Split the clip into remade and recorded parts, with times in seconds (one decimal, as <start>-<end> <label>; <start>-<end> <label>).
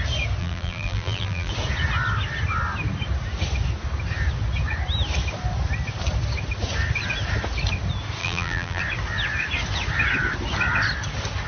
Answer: 0.0-0.4 recorded; 0.4-1.5 remade; 1.5-8.2 recorded; 8.2-8.8 remade; 8.8-11.5 recorded